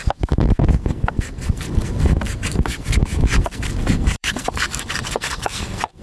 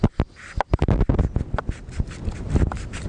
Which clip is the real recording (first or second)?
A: second